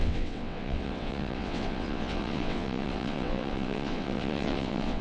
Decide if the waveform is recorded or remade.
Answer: remade